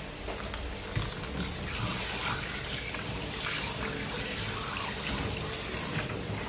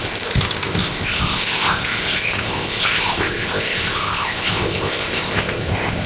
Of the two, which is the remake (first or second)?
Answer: second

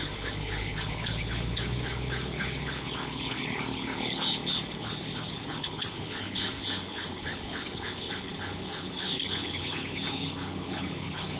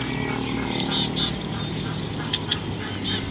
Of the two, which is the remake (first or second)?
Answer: first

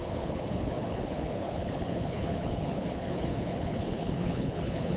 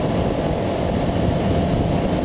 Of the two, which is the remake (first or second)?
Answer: first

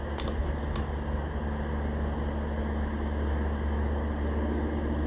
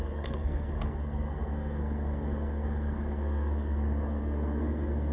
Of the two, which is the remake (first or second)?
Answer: second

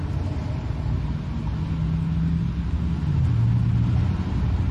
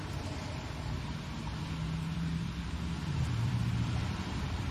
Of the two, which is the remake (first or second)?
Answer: second